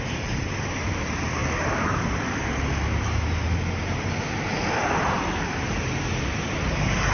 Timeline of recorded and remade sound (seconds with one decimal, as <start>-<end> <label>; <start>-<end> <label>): 0.0-7.1 recorded